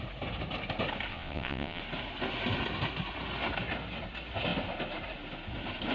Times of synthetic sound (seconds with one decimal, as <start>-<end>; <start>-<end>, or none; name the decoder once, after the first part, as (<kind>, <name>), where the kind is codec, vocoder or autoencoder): 1.1-1.8 (vocoder, WaveNeXt)